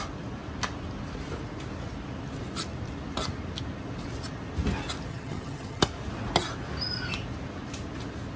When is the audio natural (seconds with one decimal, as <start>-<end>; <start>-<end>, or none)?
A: 0.0-5.1; 5.8-8.4